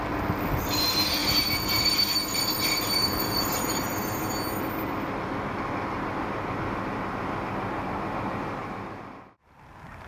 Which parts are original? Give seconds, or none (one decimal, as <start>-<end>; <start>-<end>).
0.0-1.2; 3.9-10.1

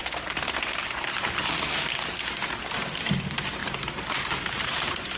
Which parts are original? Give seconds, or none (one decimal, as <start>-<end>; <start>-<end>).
0.0-3.6

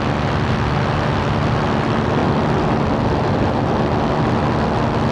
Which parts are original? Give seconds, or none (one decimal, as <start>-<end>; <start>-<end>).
0.0-2.2; 4.0-5.1